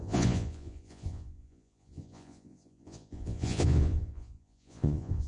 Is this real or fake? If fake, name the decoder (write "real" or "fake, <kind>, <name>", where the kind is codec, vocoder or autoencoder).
fake, vocoder, Vocos